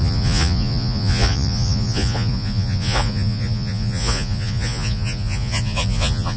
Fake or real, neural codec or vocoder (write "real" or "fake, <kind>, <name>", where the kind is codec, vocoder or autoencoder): fake, vocoder, Vocos